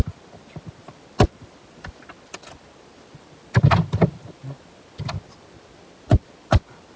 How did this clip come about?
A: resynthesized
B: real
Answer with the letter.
B